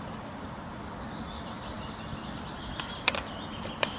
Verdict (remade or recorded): remade